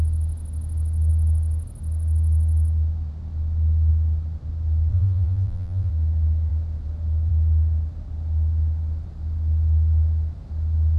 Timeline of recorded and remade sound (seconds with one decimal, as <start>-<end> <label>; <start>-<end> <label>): 0.0-4.9 recorded; 4.9-5.9 remade; 5.9-11.0 recorded